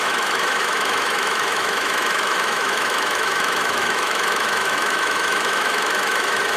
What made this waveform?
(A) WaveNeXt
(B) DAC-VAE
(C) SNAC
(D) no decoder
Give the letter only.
B